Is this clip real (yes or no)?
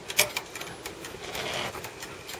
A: yes